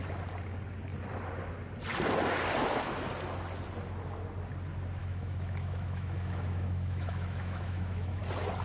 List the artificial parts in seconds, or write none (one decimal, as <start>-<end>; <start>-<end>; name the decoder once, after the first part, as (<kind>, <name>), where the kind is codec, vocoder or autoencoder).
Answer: 5.0-8.2 (autoencoder, DAC-VAE)